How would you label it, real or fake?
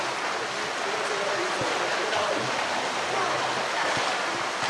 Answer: real